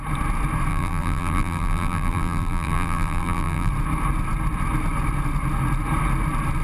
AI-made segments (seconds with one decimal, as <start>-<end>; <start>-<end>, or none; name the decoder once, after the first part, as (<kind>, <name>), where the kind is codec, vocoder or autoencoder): 0.7-3.7 (vocoder, BigVGAN v2)